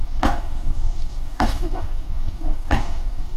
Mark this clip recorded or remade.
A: remade